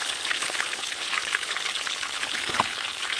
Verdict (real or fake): fake